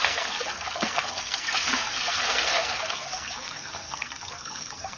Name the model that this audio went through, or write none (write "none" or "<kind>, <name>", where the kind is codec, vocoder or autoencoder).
codec, SNAC